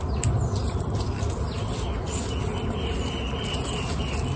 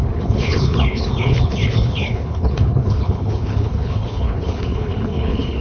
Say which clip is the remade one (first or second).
second